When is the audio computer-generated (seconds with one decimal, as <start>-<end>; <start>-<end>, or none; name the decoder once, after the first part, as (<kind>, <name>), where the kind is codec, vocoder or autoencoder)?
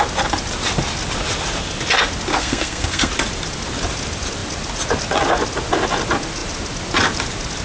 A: 2.3-3.1 (codec, SNAC)